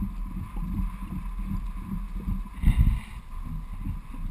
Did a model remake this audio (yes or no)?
no